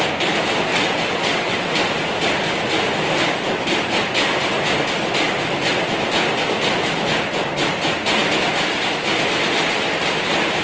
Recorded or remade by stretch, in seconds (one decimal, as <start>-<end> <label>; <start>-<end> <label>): 0.0-0.7 recorded; 0.7-1.9 remade; 1.9-10.6 recorded